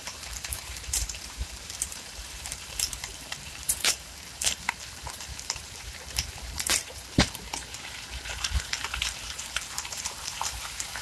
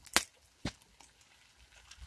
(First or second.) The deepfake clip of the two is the first